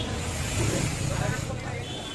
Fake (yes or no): no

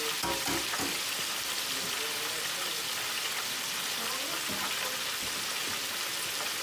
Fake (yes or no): no